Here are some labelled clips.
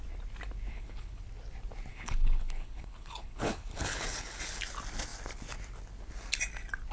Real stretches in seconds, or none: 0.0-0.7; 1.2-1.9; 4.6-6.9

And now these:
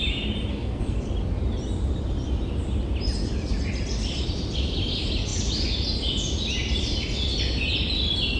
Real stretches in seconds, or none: 0.0-0.5; 1.1-8.4

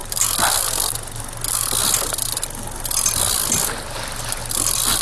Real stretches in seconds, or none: 0.0-5.0

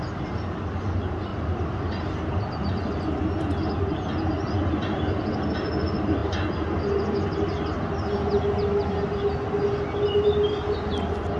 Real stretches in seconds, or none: 0.0-1.3; 3.0-11.4

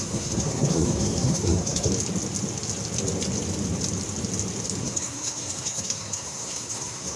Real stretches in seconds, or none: 1.9-4.8

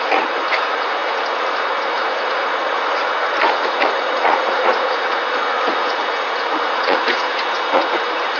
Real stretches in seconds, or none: none

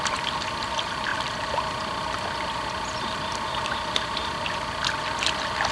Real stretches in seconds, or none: 0.0-5.7